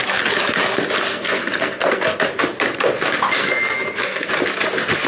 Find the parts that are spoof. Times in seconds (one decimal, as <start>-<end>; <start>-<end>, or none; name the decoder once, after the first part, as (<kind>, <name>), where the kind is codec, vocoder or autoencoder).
1.1-2.2 (codec, SNAC); 3.4-4.3